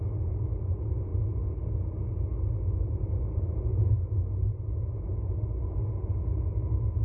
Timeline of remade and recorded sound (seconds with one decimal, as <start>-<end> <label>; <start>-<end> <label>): 0.0-7.0 recorded